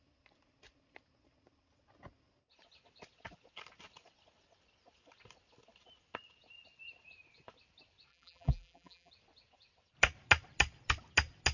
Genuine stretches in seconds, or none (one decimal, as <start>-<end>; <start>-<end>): 0.0-8.1; 9.1-11.5

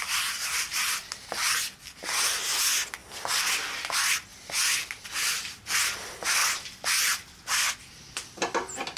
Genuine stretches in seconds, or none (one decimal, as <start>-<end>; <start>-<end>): 0.0-3.0; 3.9-4.3; 5.5-6.4; 8.3-9.0

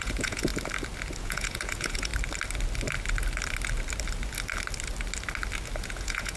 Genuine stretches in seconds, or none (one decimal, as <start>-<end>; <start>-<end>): 0.5-1.2; 2.1-5.9

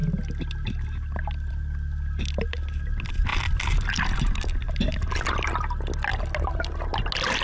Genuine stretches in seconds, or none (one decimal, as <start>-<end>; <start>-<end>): 0.0-7.4

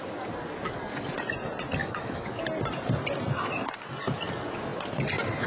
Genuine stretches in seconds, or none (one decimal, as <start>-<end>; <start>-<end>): 0.0-1.8; 2.4-5.5

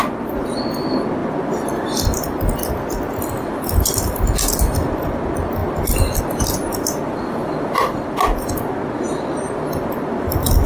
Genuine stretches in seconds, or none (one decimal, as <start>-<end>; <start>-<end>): 0.0-10.7

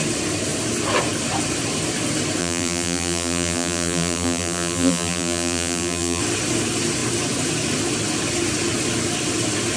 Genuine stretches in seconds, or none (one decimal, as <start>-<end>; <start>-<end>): 0.0-2.4; 6.2-9.8

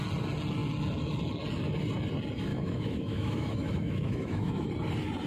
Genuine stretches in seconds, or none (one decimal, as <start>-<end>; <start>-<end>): 0.0-2.5; 4.7-5.3